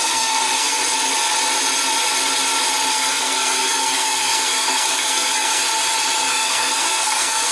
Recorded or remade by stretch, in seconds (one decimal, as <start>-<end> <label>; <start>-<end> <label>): 0.0-0.8 remade; 0.8-2.9 recorded; 2.9-5.6 remade; 5.6-6.3 recorded; 6.3-7.5 remade